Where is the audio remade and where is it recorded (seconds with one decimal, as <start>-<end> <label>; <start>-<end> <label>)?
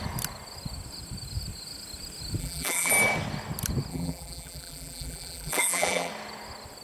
0.0-2.4 recorded; 2.4-2.9 remade; 2.9-3.9 recorded; 3.9-6.1 remade; 6.1-6.8 recorded